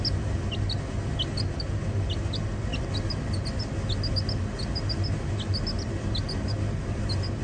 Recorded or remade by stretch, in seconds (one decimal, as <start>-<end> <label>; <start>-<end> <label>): 0.0-7.4 recorded